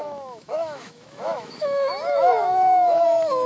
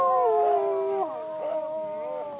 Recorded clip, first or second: second